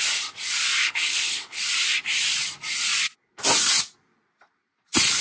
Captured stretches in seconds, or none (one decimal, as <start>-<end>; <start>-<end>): 0.0-0.8; 1.6-5.2